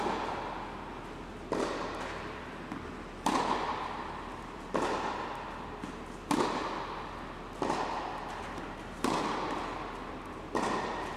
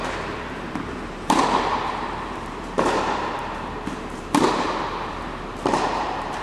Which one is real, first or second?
first